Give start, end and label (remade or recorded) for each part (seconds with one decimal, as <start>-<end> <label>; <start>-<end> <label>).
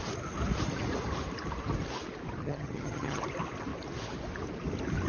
0.0-2.4 recorded; 2.4-3.2 remade; 3.2-5.1 recorded